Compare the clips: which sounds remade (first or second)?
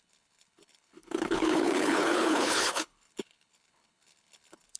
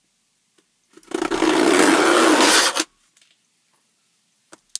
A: first